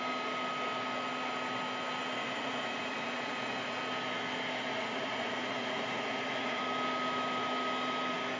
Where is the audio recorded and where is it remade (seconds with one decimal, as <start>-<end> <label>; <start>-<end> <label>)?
0.0-2.2 recorded; 2.2-3.8 remade; 3.8-4.7 recorded; 4.7-6.6 remade; 6.6-8.4 recorded